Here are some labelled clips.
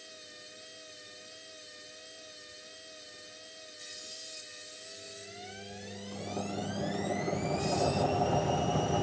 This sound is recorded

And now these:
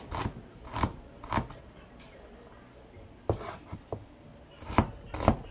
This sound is recorded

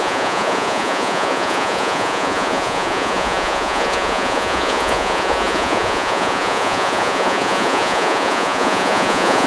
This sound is remade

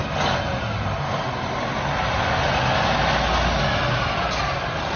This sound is recorded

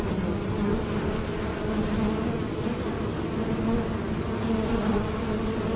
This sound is recorded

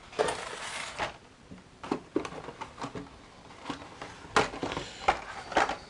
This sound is recorded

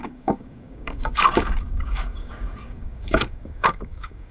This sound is remade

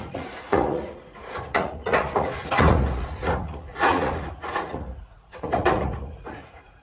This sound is remade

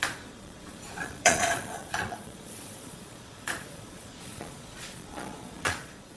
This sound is remade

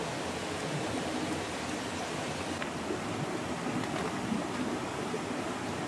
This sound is recorded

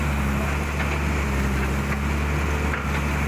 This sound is recorded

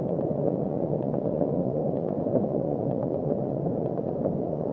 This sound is remade